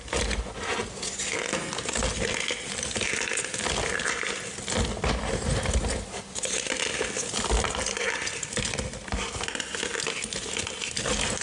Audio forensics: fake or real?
real